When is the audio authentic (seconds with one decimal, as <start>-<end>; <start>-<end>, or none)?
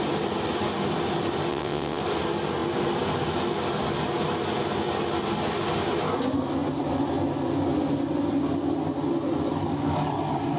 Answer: 0.0-1.5; 2.0-10.6